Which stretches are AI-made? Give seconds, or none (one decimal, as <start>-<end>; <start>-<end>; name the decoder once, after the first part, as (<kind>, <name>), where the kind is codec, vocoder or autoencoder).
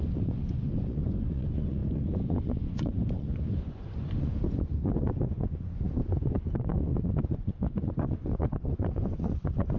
0.0-9.8 (vocoder, Vocos)